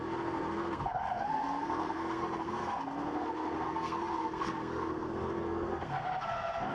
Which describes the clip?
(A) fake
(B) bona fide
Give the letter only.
A